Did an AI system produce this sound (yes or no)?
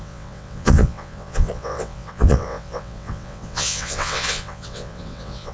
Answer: yes